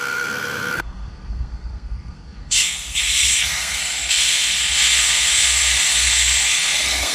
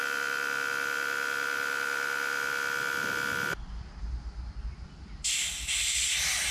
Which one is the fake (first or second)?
first